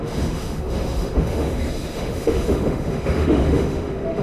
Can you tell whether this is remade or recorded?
remade